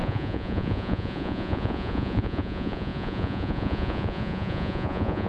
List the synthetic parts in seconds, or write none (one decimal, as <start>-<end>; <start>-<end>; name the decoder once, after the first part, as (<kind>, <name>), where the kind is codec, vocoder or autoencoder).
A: 0.0-5.3 (vocoder, Vocos)